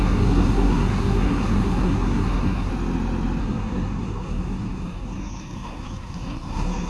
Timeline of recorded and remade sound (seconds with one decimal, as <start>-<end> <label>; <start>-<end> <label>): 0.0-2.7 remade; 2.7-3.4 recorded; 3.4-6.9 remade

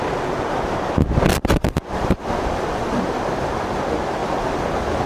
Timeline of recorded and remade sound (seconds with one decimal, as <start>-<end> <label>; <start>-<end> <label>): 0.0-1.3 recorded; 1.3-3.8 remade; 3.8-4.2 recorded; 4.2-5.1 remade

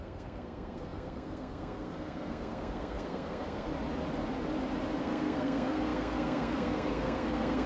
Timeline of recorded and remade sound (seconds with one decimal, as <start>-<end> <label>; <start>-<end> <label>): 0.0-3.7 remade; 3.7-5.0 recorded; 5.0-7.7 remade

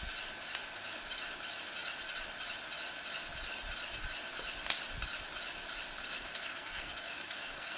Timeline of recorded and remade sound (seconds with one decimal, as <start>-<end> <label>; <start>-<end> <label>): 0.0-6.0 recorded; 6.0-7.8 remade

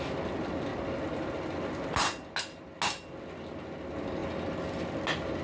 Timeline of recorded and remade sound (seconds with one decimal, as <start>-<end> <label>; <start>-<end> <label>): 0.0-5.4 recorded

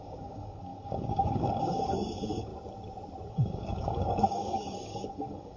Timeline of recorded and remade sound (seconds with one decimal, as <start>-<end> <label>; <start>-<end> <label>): 0.0-2.5 remade; 2.5-3.3 recorded; 3.3-5.6 remade

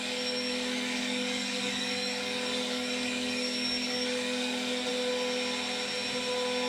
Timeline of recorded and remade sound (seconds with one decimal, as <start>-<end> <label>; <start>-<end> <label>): 0.0-4.9 remade; 4.9-6.7 recorded